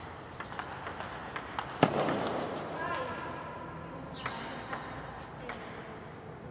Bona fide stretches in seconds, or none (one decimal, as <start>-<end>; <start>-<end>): 0.0-6.5